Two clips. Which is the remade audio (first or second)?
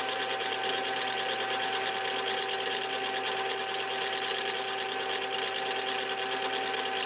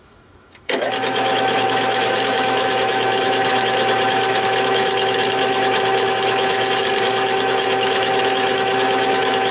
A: second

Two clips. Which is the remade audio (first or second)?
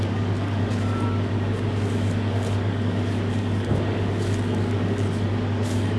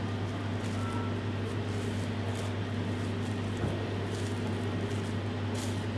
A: first